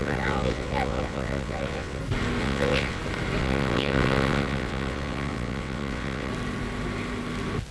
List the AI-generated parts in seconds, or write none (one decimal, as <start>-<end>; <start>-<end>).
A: 0.0-2.0; 2.4-3.0; 3.4-6.3